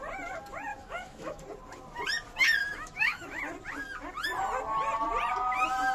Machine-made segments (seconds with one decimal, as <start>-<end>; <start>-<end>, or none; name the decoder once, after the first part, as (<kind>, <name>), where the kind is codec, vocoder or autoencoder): 0.7-1.4 (autoencoder, DAC-VAE); 2.6-3.4